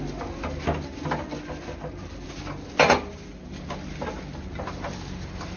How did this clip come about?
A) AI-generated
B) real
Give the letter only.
B